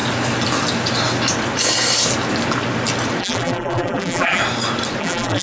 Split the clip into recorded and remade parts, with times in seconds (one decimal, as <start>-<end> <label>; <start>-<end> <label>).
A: 0.0-3.2 recorded; 3.2-4.4 remade; 4.4-5.0 recorded; 5.0-5.4 remade